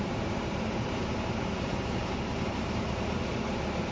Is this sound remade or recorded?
remade